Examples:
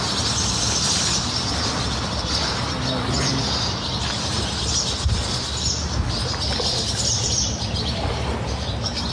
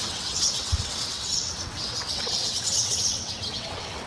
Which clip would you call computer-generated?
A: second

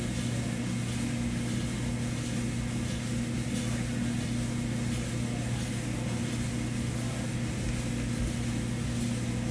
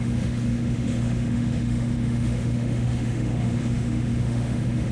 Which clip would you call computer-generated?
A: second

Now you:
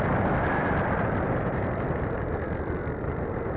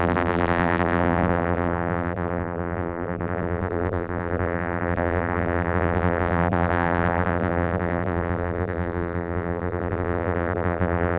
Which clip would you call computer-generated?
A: second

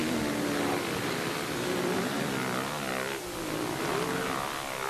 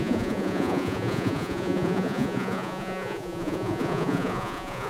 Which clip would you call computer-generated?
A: second